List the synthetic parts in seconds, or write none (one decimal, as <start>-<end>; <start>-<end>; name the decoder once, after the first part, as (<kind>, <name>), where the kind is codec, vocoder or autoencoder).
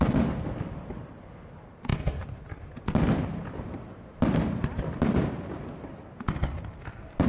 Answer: none